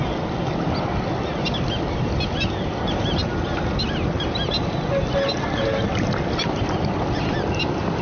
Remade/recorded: recorded